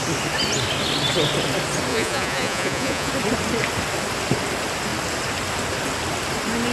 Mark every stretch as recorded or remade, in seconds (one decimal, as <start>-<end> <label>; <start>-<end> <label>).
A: 0.0-1.9 recorded; 1.9-3.1 remade; 3.1-6.7 recorded